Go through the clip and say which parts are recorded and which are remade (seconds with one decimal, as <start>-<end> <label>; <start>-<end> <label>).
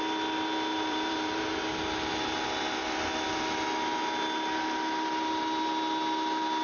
0.0-0.7 recorded; 0.7-1.6 remade; 1.6-6.6 recorded